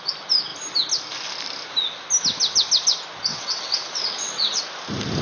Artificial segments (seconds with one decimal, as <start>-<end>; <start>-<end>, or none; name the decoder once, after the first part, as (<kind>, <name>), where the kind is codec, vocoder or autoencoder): 3.3-4.6 (vocoder, WaveNeXt)